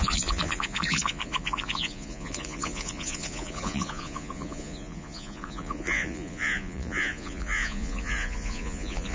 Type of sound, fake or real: fake